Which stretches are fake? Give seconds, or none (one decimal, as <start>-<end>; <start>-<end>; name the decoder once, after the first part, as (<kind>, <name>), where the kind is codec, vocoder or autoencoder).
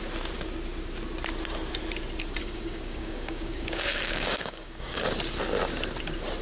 2.4-5.0 (codec, DAC)